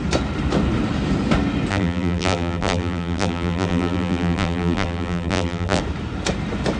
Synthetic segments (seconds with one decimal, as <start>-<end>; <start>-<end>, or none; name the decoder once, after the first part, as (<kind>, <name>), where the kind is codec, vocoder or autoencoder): 1.7-5.8 (vocoder, BigVGAN v2)